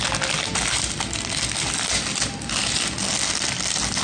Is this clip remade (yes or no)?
no